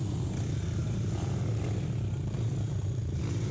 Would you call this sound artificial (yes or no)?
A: yes